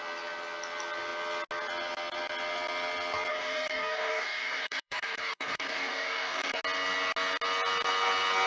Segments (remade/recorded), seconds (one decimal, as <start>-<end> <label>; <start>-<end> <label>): 0.0-3.3 recorded; 3.3-6.6 remade; 6.6-8.5 recorded